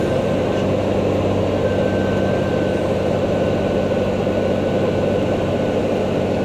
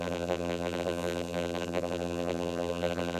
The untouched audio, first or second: first